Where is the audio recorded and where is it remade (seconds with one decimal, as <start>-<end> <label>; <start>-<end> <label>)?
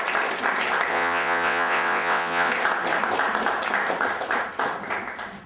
0.0-0.9 recorded; 0.9-2.5 remade; 2.5-5.5 recorded